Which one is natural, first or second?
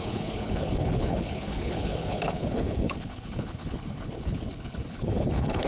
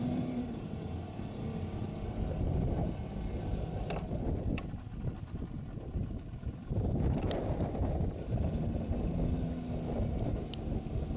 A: second